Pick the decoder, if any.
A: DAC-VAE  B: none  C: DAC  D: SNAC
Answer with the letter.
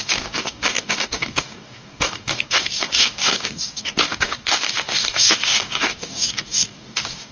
C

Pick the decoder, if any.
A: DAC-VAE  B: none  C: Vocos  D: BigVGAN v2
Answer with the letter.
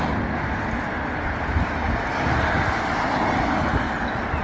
B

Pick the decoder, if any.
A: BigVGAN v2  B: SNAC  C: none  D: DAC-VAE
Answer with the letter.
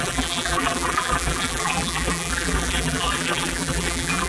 A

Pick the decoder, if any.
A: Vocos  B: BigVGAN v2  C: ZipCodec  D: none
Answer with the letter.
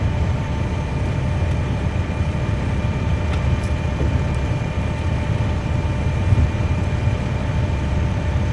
B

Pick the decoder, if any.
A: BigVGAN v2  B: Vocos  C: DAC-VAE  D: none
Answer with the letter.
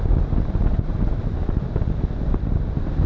D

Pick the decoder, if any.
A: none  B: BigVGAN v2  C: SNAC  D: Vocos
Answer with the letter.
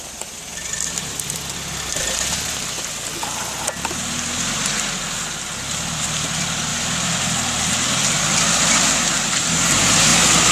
A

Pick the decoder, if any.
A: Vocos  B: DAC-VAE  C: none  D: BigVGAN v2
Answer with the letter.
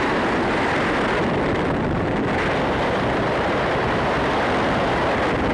D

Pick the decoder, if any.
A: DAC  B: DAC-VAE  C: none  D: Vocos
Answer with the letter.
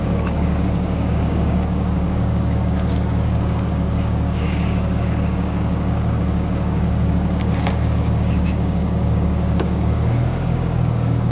A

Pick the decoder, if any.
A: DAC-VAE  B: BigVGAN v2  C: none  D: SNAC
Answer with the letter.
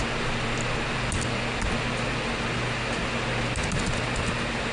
C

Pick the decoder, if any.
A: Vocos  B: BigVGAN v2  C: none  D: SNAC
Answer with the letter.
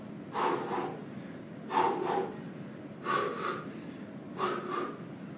C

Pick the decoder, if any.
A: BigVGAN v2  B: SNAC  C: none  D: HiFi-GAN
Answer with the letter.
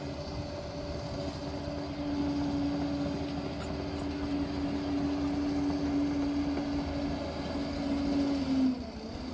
C